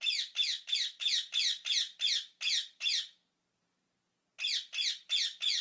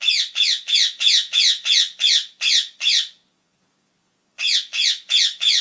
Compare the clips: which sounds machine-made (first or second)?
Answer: second